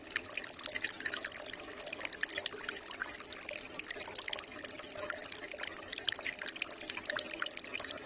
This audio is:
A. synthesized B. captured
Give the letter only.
B